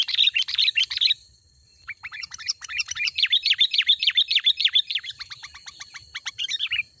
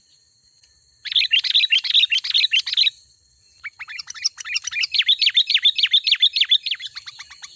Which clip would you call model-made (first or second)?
first